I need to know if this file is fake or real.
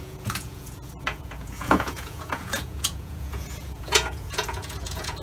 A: fake